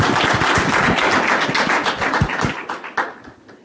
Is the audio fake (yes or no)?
no